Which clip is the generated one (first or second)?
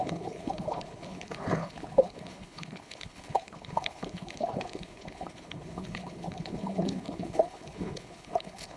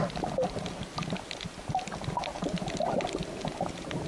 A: first